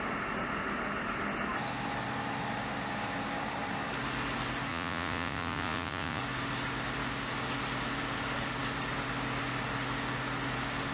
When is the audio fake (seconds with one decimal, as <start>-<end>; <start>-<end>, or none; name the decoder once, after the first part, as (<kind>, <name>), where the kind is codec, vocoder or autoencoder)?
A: 4.7-6.2 (vocoder, Vocos)

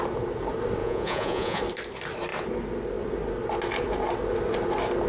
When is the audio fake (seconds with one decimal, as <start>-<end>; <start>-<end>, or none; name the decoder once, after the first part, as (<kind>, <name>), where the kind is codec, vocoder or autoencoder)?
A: 0.8-1.6 (vocoder, Vocos)

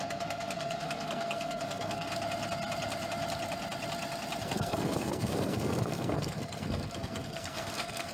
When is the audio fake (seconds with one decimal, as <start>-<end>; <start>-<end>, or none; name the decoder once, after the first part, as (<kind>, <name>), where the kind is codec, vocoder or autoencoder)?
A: 0.0-2.1 (codec, SNAC); 4.4-8.1

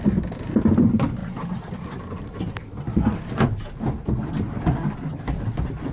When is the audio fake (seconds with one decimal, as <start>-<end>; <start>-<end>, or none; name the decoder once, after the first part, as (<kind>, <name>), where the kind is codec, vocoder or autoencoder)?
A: none

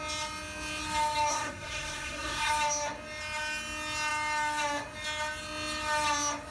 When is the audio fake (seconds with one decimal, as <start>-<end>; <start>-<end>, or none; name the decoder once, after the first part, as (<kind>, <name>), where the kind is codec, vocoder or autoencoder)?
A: 1.3-2.5 (codec, SNAC)

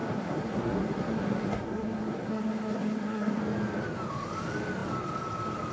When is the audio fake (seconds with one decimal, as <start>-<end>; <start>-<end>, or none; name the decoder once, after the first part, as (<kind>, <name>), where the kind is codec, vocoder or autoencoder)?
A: 0.0-3.4 (codec, SNAC)

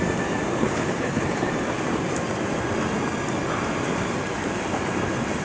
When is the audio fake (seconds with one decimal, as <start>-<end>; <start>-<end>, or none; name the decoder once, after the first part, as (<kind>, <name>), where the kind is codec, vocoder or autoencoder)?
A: 0.5-1.5 (codec, HILCodec)